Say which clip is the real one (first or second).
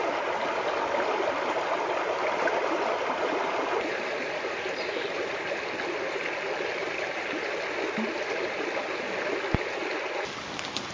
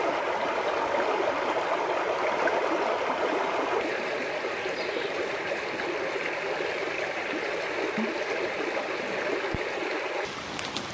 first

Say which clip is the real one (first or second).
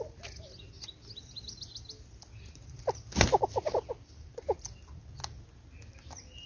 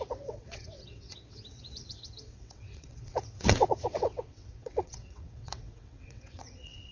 first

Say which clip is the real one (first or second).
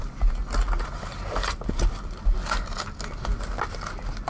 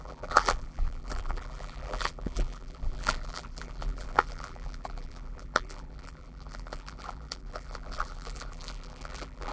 first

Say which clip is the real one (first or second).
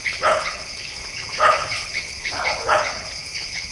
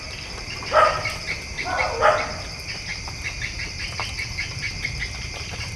second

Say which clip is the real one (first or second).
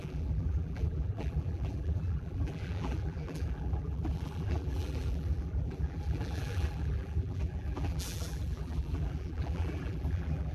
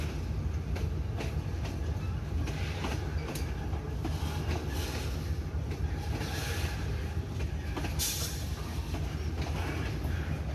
second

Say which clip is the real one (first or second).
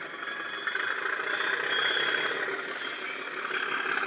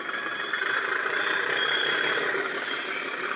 first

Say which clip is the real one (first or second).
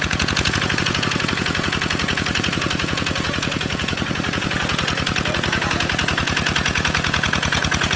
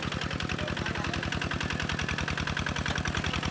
second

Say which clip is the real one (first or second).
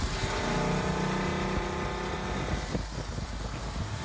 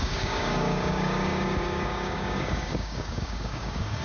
first